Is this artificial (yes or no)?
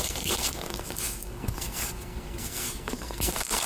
yes